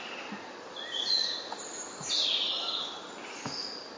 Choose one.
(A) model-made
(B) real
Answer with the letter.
B